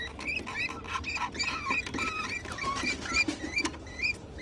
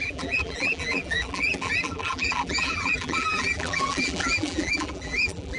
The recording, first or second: first